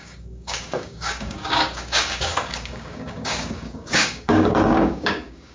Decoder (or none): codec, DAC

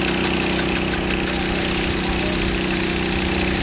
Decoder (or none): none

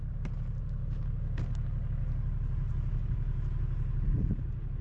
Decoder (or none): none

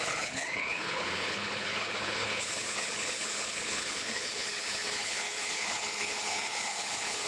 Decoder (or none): codec, HILCodec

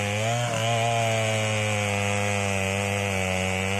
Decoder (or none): none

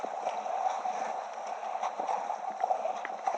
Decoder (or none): none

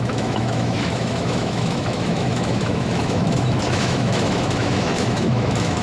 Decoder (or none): autoencoder, DAC-VAE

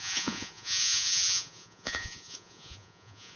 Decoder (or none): vocoder, Vocos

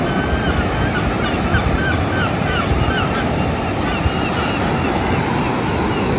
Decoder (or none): none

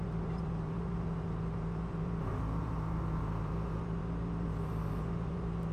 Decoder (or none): vocoder, BigVGAN v2